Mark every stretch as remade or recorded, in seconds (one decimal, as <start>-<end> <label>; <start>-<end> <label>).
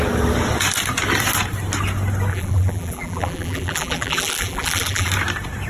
0.0-2.3 recorded; 2.3-5.1 remade; 5.1-5.7 recorded